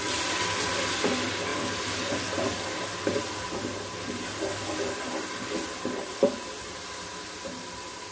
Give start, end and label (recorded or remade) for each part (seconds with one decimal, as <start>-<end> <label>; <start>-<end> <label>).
0.0-8.1 recorded